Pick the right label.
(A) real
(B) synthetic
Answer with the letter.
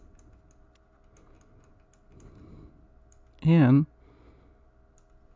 A